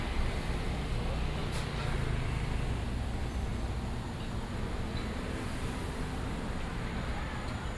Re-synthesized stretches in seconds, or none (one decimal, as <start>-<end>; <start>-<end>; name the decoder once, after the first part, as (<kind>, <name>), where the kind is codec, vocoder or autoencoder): none